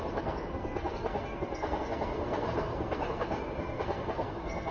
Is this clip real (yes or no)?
no